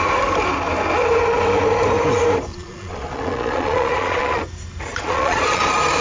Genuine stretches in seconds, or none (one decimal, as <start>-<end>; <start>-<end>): 0.0-2.5; 4.4-4.9; 5.6-6.0